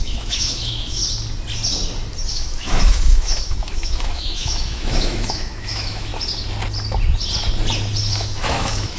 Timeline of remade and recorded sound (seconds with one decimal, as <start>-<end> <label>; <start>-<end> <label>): 0.0-1.0 remade; 1.0-2.3 recorded; 2.3-6.1 remade; 6.1-8.1 recorded; 8.1-9.0 remade